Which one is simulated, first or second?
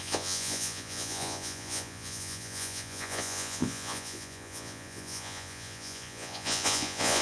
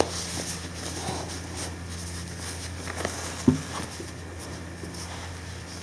first